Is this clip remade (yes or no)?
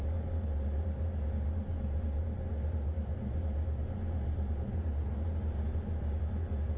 no